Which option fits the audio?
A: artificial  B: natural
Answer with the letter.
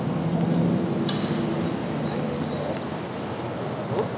B